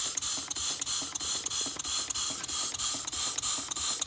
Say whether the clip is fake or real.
real